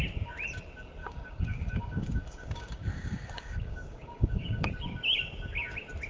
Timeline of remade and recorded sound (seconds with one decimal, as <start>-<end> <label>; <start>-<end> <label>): 0.0-1.0 recorded; 1.0-4.7 remade; 4.7-6.1 recorded